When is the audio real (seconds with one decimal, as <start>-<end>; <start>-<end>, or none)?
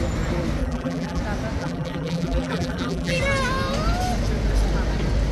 0.0-0.6; 1.2-1.6; 3.2-5.3